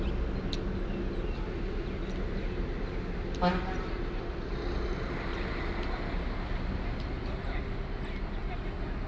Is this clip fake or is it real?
real